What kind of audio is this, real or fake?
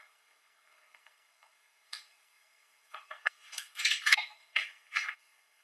fake